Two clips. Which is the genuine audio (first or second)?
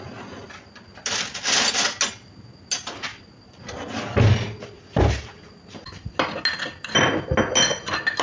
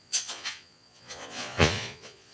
first